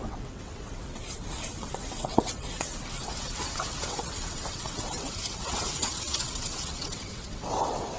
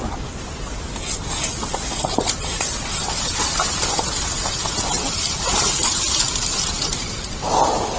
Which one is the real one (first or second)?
second